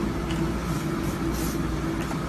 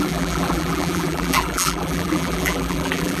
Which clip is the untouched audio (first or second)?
first